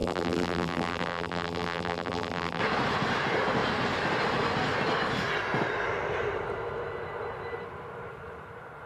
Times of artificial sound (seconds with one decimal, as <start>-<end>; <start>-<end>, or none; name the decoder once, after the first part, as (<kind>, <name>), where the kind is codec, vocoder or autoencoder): 0.0-2.6 (vocoder, BigVGAN v2)